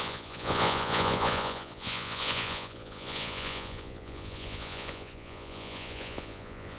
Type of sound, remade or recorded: remade